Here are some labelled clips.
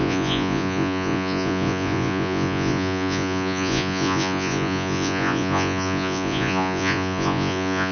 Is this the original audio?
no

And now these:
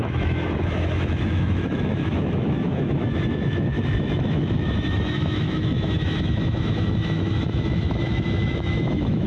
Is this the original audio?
no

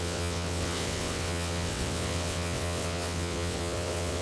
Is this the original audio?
no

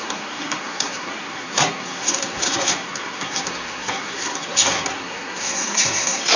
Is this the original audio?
no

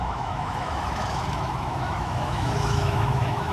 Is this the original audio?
no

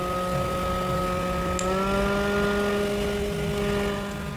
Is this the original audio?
yes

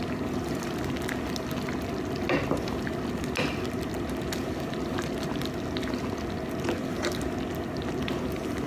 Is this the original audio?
yes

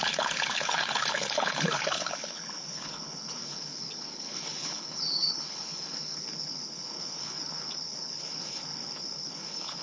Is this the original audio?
no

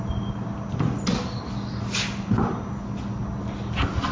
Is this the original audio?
yes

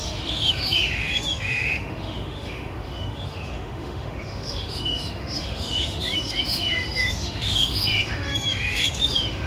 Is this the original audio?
no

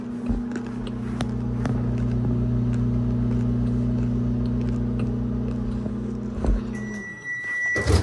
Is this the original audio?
yes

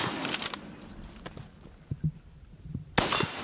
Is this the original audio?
yes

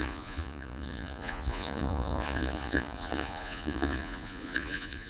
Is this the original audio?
no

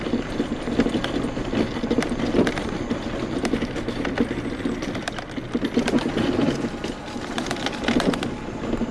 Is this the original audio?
yes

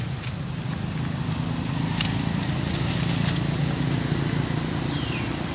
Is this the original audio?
yes